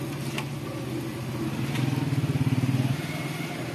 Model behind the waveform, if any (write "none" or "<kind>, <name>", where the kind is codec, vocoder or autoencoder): none